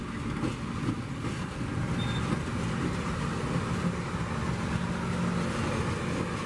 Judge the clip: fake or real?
real